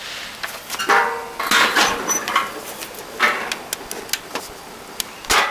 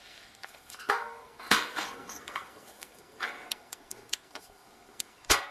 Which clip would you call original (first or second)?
first